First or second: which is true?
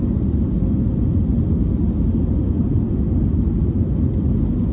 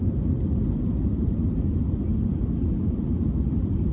first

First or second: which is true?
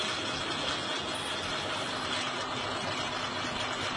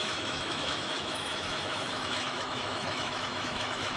first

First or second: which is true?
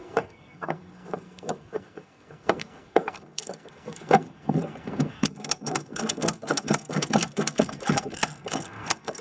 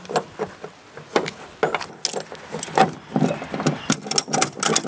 second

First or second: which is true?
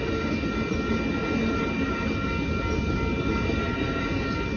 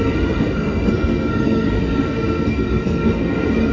first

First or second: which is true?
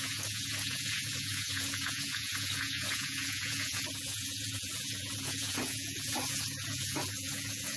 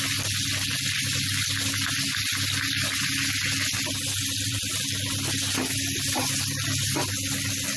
second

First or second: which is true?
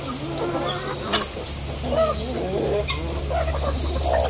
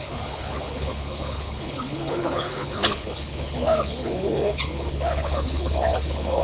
first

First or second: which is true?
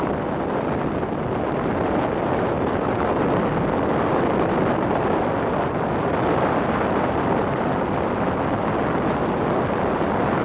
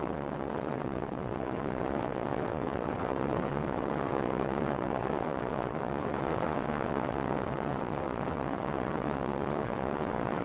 first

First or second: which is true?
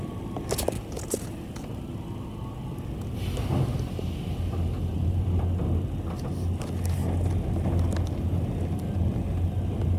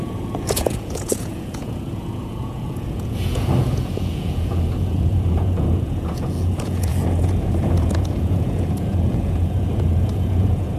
first